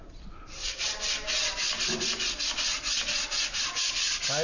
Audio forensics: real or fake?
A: real